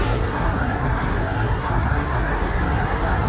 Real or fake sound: fake